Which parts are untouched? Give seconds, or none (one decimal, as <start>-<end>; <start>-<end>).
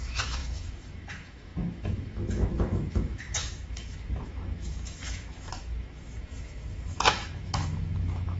none